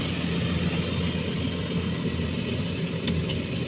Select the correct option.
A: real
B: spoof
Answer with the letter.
A